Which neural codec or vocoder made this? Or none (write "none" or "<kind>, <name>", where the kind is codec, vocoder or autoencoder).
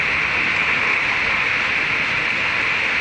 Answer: none